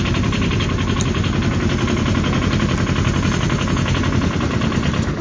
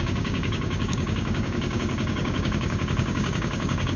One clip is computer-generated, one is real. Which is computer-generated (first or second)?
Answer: second